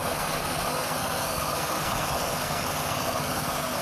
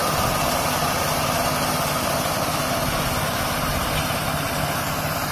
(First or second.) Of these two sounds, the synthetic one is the first